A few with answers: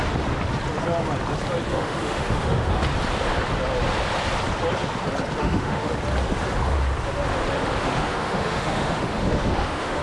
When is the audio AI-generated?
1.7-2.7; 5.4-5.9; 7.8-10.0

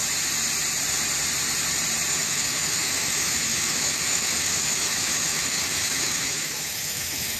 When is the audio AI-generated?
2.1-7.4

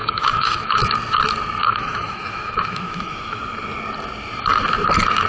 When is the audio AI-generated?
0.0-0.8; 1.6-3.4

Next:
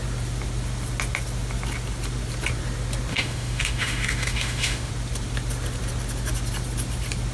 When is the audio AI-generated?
3.1-4.9

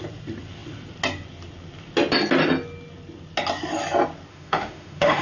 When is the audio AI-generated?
4.3-5.2

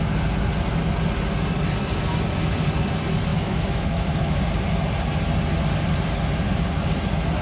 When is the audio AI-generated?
3.3-4.4

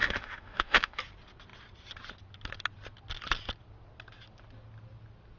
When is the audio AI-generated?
0.0-1.0

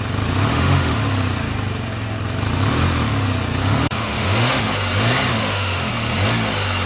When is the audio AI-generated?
0.5-1.0; 3.6-4.6; 5.3-5.9